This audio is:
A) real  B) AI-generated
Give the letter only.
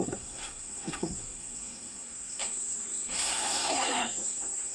B